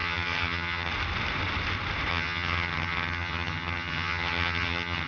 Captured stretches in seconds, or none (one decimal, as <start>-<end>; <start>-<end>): 0.9-2.1